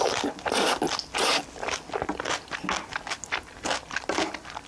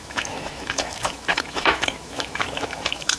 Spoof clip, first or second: second